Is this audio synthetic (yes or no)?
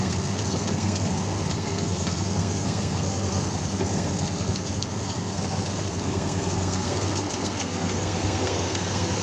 yes